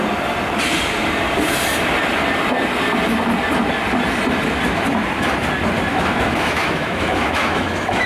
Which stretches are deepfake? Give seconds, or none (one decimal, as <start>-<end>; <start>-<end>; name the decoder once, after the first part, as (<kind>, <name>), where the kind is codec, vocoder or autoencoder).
5.9-8.1 (autoencoder, DAC-VAE)